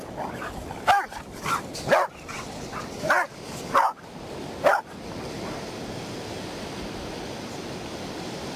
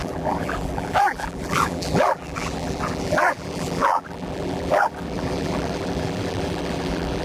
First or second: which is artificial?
second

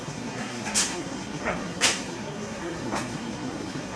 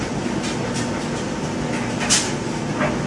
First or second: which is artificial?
first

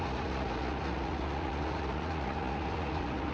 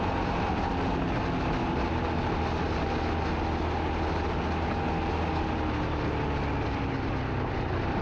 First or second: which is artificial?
first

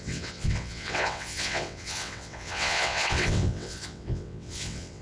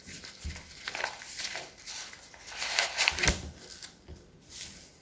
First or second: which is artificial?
first